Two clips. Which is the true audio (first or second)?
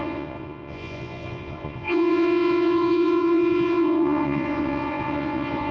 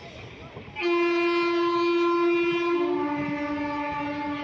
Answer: second